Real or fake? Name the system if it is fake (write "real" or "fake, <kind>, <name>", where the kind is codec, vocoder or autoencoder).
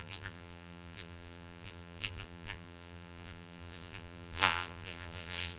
fake, vocoder, BigVGAN v2